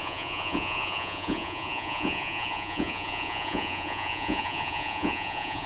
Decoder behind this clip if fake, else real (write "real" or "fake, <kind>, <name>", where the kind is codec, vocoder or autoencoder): fake, vocoder, Vocos